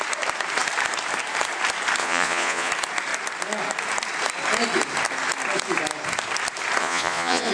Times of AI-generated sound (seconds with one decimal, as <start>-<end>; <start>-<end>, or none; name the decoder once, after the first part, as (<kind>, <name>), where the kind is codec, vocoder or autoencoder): 2.0-2.7 (vocoder, Vocos); 6.8-7.5